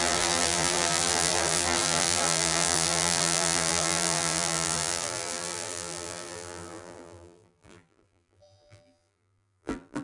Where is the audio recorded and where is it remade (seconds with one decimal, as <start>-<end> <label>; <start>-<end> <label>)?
0.0-10.0 remade